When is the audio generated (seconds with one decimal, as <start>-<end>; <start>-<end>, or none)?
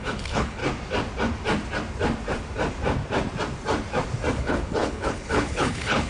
0.0-0.6; 4.3-6.1